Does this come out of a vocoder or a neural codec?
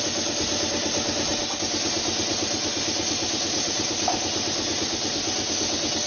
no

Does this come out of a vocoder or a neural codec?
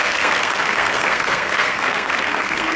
yes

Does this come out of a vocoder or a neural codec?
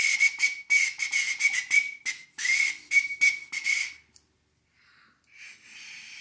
no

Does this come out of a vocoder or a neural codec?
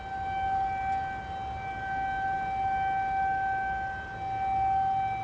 no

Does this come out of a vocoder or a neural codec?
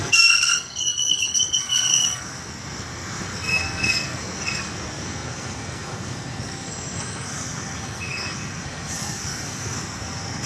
yes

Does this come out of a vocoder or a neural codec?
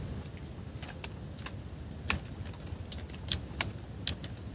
no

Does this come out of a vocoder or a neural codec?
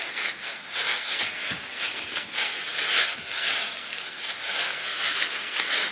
yes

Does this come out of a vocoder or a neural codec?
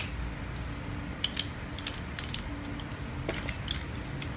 no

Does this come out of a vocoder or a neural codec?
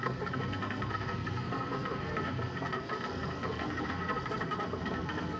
yes